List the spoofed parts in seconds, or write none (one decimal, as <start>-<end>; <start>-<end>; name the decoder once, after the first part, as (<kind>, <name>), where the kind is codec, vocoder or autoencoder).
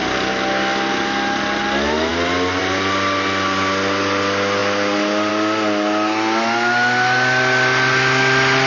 none